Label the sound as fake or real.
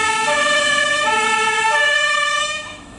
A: fake